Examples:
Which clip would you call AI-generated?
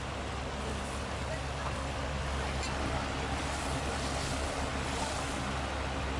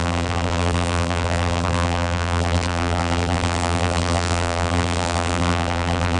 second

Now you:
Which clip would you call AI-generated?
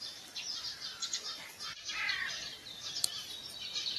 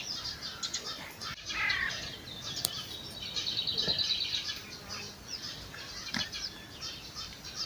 first